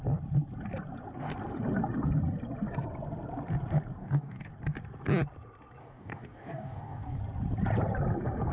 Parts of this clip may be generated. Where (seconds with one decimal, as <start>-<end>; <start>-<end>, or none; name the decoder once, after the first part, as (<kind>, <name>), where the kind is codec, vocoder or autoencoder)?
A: 4.0-4.5 (codec, DAC); 5.8-7.2